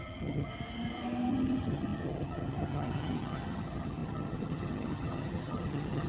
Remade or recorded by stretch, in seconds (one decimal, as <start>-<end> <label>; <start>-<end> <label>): 0.0-0.5 remade; 0.5-1.3 recorded; 1.3-6.1 remade